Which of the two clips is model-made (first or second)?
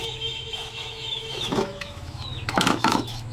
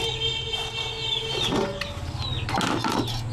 first